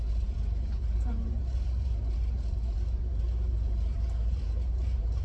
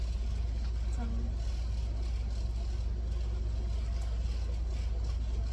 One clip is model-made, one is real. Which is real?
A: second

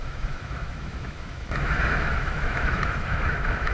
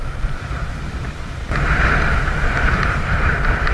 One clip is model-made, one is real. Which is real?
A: second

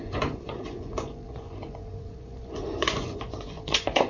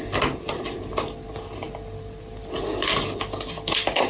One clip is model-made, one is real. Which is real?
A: second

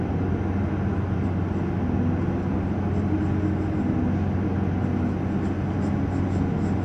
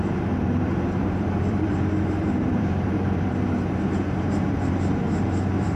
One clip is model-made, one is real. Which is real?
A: first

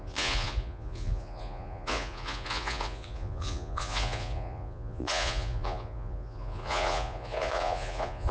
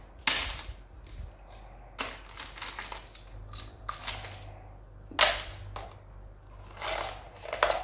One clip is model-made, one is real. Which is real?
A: second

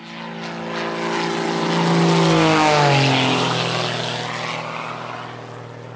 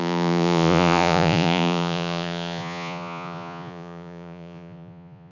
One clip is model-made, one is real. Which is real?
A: first